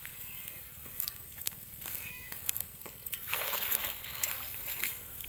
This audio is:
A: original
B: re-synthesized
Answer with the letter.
B